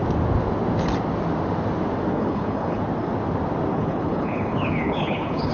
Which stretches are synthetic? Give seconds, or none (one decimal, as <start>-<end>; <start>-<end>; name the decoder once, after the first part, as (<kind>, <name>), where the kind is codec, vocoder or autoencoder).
2.1-2.8 (codec, HILCodec); 3.7-5.5

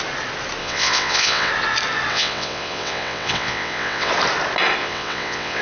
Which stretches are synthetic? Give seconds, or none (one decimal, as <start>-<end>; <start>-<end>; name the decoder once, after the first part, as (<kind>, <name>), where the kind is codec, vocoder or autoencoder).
0.6-1.5 (vocoder, WaveNeXt); 2.1-4.1; 4.8-5.6

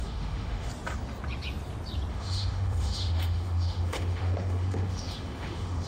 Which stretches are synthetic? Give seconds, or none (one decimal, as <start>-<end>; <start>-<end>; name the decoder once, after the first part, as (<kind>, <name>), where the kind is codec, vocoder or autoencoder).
0.0-0.7 (autoencoder, DAC-VAE); 2.1-5.9

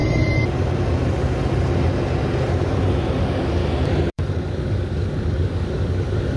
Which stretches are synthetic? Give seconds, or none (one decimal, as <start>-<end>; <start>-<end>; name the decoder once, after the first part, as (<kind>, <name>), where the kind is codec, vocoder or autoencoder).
3.2-3.6 (codec, DAC); 4.1-6.4

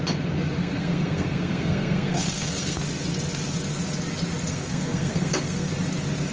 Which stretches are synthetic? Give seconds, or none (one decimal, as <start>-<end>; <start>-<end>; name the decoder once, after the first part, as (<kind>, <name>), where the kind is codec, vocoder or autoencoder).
0.6-2.8 (codec, SNAC); 4.5-5.7

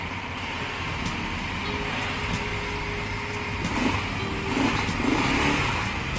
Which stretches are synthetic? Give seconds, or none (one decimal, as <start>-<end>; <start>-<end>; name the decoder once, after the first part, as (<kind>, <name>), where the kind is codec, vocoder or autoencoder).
none

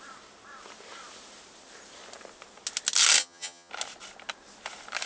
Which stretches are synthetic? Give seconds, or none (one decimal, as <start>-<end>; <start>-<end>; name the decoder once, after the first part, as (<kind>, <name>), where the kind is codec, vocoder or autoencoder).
3.2-3.7 (vocoder, HiFi-GAN)

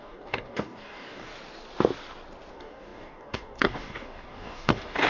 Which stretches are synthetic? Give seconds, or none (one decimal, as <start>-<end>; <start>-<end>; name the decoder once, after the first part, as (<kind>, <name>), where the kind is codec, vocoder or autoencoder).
0.0-1.3 (codec, DAC); 2.5-5.1